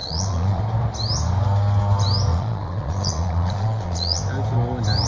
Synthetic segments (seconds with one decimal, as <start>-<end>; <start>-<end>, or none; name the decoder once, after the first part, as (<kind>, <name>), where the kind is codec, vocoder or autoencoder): 0.0-0.6 (vocoder, Vocos); 2.3-4.2